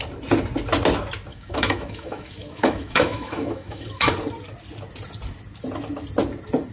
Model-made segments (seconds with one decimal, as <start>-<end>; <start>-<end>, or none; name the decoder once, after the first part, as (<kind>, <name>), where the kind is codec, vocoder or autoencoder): 1.3-4.1 (autoencoder, DAC-VAE)